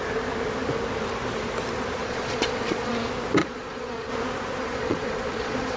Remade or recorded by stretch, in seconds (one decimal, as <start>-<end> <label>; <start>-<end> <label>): 0.0-2.0 recorded; 2.0-2.9 remade; 2.9-3.4 recorded; 3.4-4.1 remade; 4.1-4.6 recorded; 4.6-5.8 remade